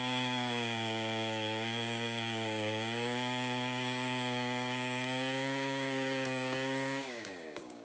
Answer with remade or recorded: remade